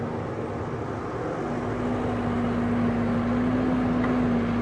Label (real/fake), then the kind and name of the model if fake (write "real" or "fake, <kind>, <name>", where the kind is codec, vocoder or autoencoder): real